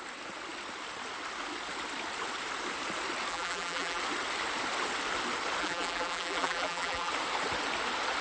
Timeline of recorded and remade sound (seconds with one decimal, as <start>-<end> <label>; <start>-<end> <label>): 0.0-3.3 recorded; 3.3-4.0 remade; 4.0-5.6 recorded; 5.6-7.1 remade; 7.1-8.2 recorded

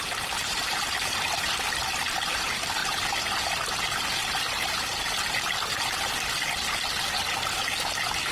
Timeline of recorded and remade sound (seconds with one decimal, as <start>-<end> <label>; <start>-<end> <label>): 0.0-2.8 remade; 2.8-7.2 recorded; 7.2-8.3 remade

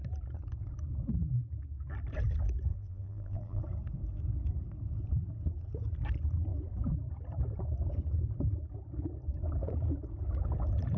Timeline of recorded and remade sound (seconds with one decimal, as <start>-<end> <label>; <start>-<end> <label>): 0.0-2.7 recorded; 2.7-3.6 remade; 3.6-11.0 recorded

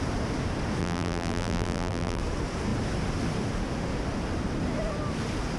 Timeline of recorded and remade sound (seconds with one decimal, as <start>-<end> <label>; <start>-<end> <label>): 0.0-0.8 recorded; 0.8-2.2 remade; 2.2-5.6 recorded